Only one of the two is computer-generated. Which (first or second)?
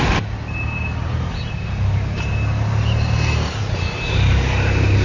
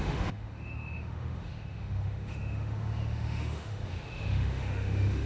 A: second